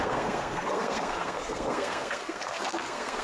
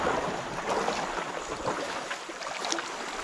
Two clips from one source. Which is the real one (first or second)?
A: second